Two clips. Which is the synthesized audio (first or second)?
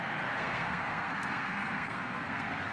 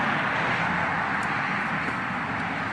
first